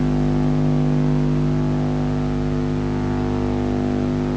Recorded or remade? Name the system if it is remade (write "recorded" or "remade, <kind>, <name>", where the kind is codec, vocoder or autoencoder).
recorded